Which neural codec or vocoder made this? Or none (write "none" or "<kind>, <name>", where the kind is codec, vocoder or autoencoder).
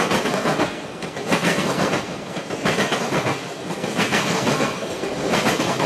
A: codec, SNAC